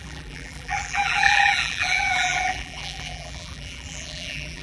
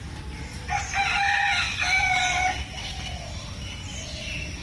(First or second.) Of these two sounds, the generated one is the first